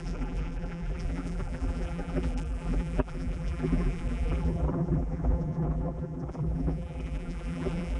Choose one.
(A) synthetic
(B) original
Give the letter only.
A